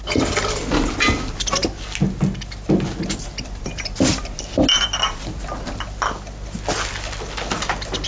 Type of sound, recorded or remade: recorded